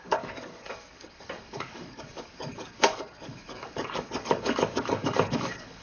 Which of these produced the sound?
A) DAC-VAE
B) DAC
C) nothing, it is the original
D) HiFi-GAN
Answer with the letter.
B